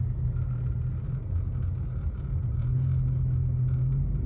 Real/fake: real